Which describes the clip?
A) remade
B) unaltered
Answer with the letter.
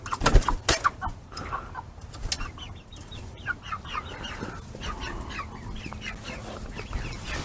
B